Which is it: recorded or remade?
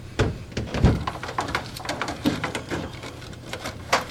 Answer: remade